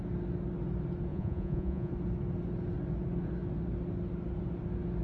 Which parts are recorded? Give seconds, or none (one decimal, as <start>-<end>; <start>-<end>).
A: 0.0-1.1; 1.9-5.0